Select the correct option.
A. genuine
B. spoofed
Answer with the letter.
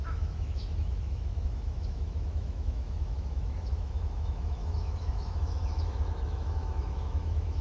B